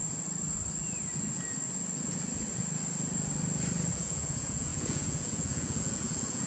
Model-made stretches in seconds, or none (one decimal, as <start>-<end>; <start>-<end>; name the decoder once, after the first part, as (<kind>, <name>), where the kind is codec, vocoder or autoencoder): 3.9-6.5 (vocoder, Vocos)